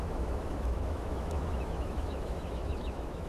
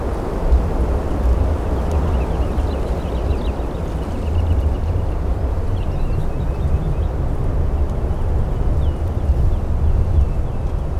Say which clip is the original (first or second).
second